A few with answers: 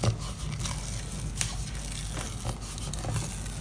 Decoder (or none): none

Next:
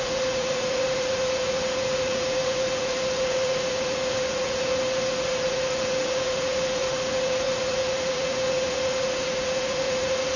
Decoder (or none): vocoder, Vocos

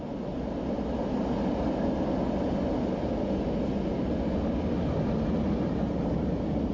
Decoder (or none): none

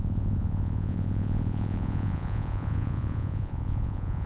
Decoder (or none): vocoder, Vocos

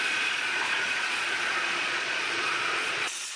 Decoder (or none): vocoder, Vocos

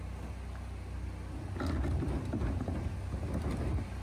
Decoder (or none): none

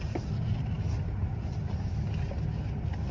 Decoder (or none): none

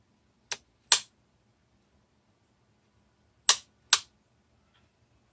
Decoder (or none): none